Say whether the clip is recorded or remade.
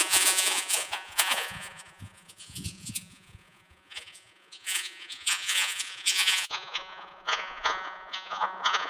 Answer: remade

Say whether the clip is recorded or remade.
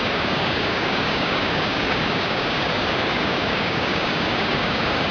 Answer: remade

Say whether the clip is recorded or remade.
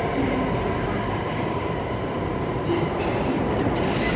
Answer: recorded